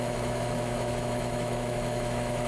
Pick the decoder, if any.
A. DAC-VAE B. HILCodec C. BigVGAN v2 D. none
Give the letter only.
A